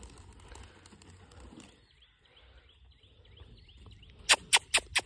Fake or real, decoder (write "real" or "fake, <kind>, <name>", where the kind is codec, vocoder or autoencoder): real